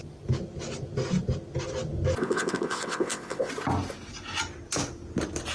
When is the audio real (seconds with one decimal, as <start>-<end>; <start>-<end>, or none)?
0.0-2.2; 3.5-5.5